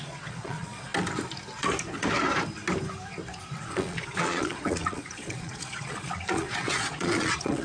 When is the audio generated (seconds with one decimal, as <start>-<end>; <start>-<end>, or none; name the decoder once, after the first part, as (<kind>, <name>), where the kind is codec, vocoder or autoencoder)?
0.0-0.9 (vocoder, Vocos); 3.6-7.6